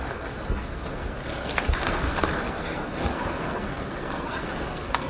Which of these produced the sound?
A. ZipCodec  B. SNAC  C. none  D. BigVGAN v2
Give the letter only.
B